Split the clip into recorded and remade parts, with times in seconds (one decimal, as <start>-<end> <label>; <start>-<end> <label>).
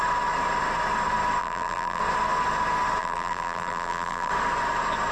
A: 0.0-1.4 recorded; 1.4-2.0 remade; 2.0-3.0 recorded; 3.0-4.3 remade; 4.3-5.1 recorded